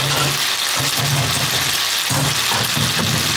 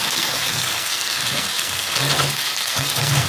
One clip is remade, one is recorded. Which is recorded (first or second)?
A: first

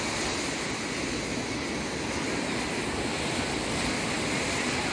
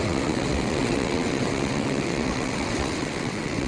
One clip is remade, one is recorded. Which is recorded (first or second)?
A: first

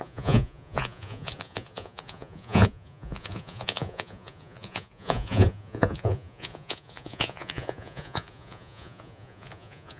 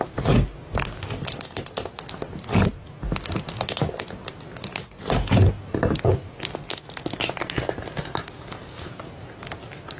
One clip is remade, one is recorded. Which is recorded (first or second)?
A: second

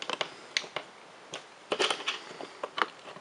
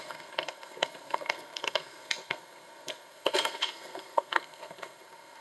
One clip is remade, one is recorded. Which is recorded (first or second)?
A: first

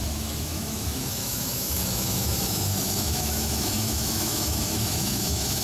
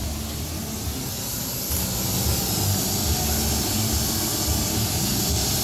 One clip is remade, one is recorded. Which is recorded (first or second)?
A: second